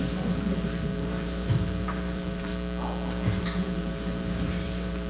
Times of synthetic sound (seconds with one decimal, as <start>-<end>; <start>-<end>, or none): 0.0-2.5; 3.3-5.1